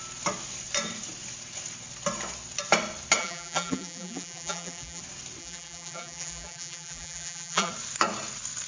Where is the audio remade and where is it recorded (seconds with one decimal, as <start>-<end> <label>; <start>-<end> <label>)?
0.0-3.2 recorded; 3.2-5.0 remade; 5.0-5.4 recorded; 5.4-7.7 remade; 7.7-8.7 recorded